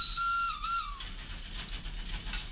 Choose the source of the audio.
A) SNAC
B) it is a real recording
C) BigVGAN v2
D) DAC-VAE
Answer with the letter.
B